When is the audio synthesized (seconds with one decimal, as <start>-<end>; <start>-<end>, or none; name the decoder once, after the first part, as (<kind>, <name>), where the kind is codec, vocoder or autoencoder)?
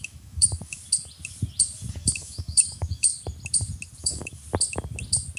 0.0-0.8 (autoencoder, DAC-VAE); 1.9-3.1; 4.0-4.4